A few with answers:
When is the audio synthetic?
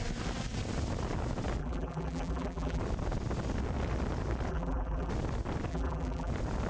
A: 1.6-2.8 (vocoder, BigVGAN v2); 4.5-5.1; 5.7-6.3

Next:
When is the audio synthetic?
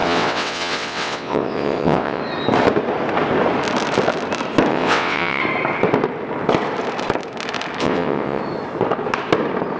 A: 0.0-2.2 (vocoder, WaveNeXt); 4.7-5.4; 7.8-8.4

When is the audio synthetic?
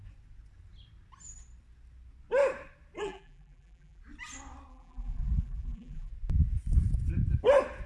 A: 3.0-4.0 (vocoder, BigVGAN v2); 4.7-6.1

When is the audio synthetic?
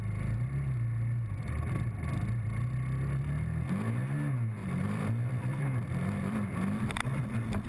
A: 4.6-6.2 (vocoder, BigVGAN v2)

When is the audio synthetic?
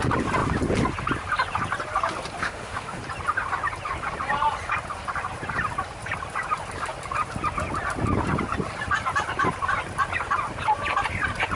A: 2.4-3.0 (autoencoder, DAC-VAE)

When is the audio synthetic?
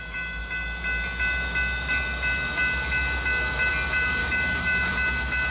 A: 4.2-4.9 (autoencoder, DAC-VAE)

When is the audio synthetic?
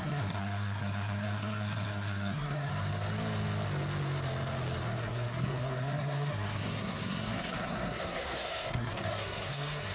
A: 0.0-2.7 (codec, SNAC); 5.0-9.9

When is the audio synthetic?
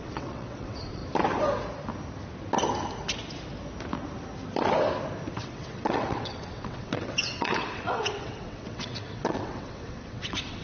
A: 0.0-1.0 (vocoder, WaveNeXt); 5.3-10.6